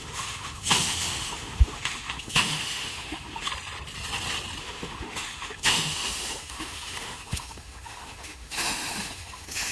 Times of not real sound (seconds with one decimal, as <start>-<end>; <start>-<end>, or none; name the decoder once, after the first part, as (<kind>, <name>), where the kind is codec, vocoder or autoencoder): 0.0-3.5 (autoencoder, DAC-VAE); 4.6-9.7